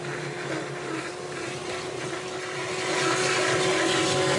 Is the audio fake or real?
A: real